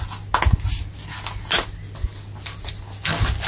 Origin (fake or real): real